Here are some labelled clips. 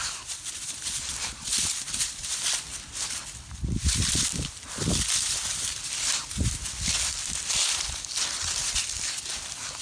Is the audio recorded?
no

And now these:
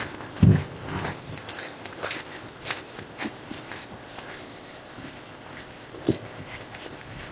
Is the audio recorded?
no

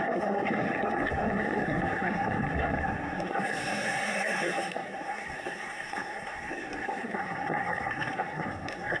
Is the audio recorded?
no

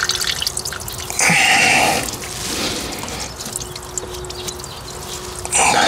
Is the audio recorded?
yes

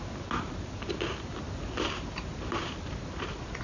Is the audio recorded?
yes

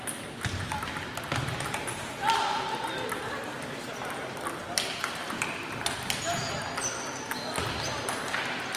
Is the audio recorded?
yes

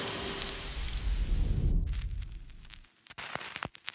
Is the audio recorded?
yes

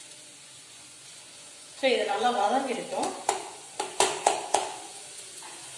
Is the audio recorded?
no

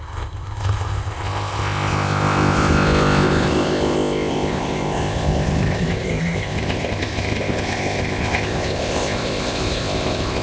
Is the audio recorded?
no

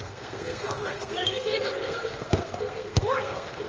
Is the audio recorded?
no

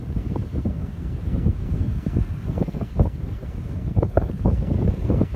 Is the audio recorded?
no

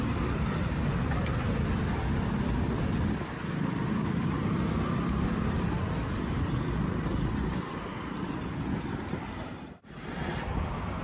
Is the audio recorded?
yes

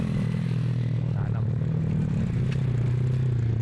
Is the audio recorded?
yes